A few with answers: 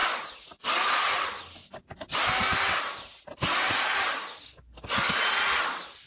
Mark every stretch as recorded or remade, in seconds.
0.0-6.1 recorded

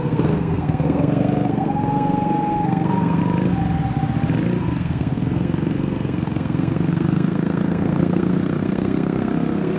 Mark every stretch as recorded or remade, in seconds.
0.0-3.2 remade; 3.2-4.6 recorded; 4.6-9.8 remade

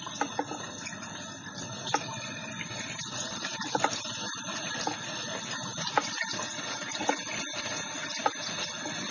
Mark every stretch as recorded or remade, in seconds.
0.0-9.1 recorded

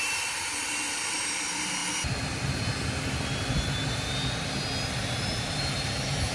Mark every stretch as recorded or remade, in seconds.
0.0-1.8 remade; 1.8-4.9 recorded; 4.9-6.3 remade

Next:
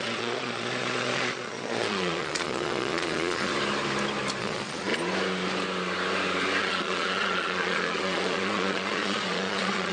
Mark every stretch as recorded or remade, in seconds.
0.0-3.5 remade; 3.5-4.4 recorded; 4.4-4.9 remade; 4.9-6.6 recorded; 6.6-9.9 remade